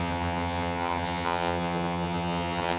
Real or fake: fake